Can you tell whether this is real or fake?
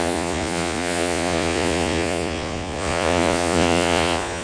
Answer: fake